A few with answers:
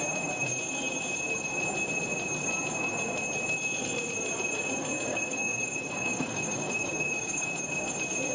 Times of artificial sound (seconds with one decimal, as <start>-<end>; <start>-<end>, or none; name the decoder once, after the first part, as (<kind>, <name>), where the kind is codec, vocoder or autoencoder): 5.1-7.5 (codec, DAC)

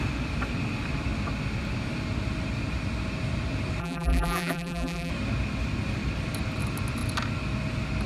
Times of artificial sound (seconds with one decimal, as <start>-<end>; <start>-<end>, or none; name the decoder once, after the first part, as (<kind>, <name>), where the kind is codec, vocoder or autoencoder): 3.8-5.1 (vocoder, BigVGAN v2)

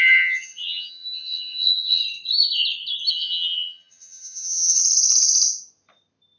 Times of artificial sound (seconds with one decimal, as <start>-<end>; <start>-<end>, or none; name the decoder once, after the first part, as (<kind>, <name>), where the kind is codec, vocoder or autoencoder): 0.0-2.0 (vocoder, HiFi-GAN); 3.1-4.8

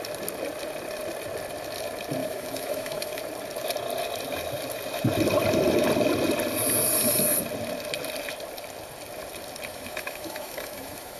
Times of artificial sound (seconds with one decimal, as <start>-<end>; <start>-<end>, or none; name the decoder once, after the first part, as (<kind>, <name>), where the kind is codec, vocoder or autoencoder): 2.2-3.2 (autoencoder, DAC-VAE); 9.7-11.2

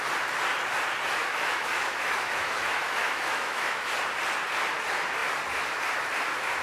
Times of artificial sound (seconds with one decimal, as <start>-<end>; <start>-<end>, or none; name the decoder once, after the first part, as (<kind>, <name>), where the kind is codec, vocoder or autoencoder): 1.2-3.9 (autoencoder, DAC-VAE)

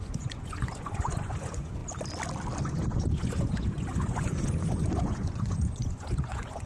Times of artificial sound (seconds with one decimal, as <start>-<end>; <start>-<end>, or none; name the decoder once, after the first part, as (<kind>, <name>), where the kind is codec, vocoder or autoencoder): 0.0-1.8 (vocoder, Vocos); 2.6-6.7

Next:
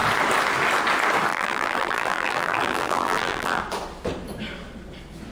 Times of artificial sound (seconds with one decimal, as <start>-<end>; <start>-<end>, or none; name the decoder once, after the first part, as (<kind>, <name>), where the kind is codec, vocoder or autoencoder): 1.3-3.6 (vocoder, BigVGAN v2)